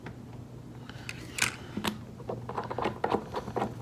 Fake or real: real